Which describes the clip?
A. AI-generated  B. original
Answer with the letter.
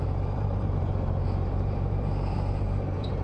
A